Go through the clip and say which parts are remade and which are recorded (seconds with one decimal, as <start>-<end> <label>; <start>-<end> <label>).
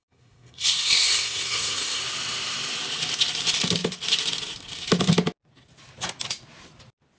0.0-2.0 remade; 2.0-7.2 recorded